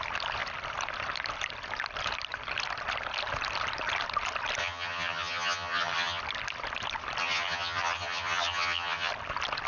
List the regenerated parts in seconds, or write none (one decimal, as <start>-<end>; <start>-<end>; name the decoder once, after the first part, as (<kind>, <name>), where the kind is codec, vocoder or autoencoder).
4.6-6.2 (vocoder, HiFi-GAN); 7.2-9.1